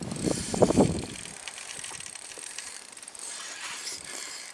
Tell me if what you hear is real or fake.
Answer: fake